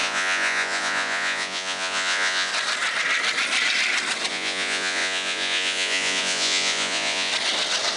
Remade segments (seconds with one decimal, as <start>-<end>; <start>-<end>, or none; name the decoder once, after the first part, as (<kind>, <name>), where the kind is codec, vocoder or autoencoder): 0.0-2.5 (vocoder, Vocos); 4.3-7.3